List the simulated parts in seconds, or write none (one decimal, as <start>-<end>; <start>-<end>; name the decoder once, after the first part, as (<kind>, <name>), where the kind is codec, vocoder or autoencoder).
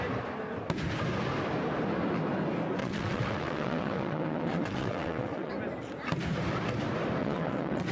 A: 2.8-5.5 (vocoder, WaveNeXt); 7.2-7.9